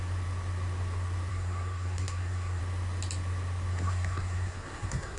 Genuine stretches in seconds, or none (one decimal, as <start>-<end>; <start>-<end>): 0.0-1.3; 2.6-3.7